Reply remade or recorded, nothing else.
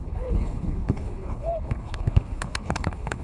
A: remade